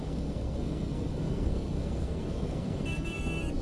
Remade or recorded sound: remade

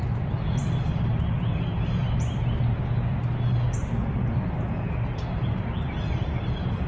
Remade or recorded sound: recorded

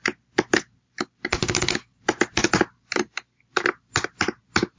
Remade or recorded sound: recorded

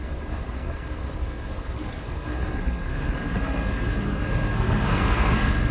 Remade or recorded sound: remade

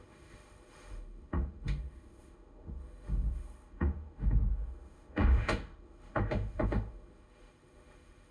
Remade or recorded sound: remade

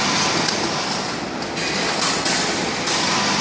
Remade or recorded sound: recorded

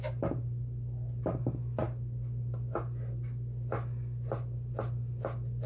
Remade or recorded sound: recorded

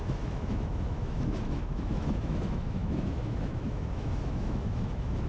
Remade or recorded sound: remade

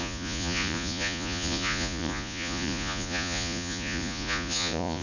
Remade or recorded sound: remade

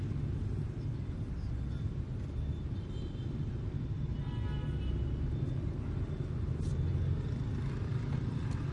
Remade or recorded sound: recorded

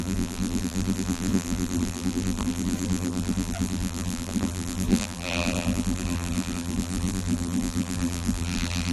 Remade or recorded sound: remade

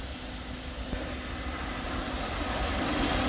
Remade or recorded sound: recorded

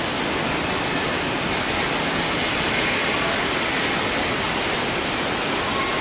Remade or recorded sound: recorded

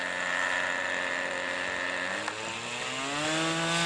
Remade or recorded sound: recorded